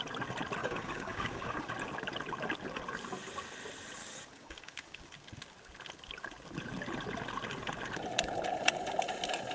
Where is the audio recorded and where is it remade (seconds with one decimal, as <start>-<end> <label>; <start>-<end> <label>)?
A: 0.0-0.6 recorded; 0.6-1.7 remade; 1.7-4.0 recorded; 4.0-5.0 remade; 5.0-9.5 recorded